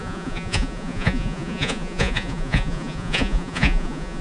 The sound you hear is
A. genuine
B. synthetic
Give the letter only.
B